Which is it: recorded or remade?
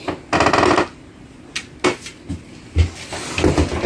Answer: recorded